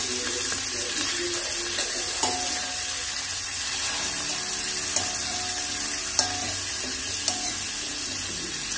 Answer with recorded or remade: recorded